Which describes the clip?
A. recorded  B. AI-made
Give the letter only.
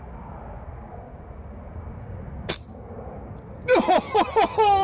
A